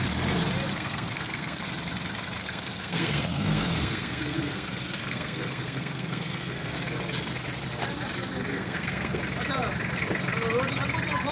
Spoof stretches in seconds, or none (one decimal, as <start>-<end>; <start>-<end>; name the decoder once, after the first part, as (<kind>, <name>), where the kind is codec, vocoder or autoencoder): 0.7-1.6 (codec, SNAC); 2.4-6.8; 8.5-9.2